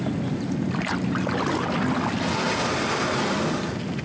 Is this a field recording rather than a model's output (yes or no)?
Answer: yes